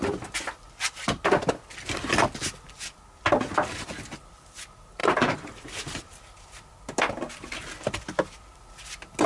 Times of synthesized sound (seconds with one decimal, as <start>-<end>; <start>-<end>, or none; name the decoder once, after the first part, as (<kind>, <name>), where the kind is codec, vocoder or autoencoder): 5.0-6.7 (vocoder, BigVGAN v2)